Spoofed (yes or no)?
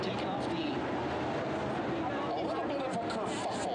no